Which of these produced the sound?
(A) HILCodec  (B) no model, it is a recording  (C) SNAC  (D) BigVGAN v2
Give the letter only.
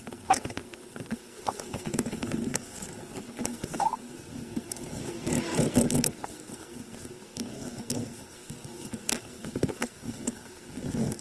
C